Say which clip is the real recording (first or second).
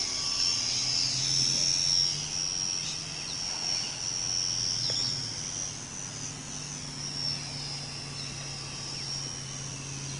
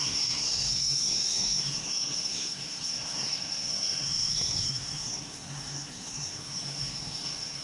first